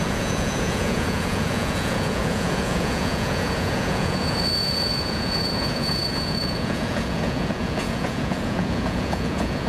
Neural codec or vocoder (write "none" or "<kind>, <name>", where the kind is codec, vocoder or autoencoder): vocoder, Vocos